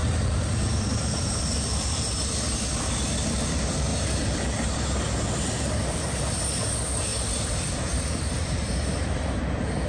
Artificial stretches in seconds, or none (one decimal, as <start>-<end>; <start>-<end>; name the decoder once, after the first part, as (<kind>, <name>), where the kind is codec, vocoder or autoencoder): 0.0-2.6 (vocoder, BigVGAN v2); 3.9-6.6; 7.1-9.4